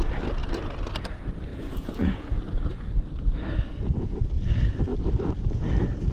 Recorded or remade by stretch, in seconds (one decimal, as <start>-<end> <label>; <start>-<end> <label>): 0.0-1.5 recorded; 1.5-2.4 remade; 2.4-3.7 recorded; 3.7-4.3 remade; 4.3-6.1 recorded

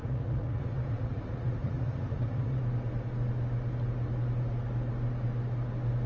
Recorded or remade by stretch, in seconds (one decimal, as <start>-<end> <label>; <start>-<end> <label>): 0.0-2.6 remade; 2.6-6.1 recorded